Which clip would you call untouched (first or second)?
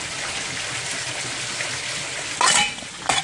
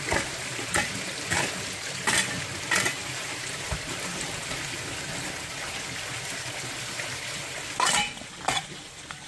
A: first